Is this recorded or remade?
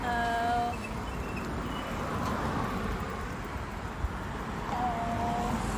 recorded